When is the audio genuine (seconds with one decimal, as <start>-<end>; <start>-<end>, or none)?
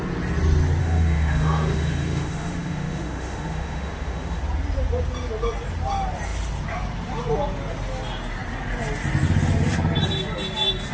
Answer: 0.0-0.8; 4.4-10.9